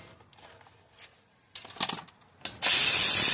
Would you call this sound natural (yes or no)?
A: yes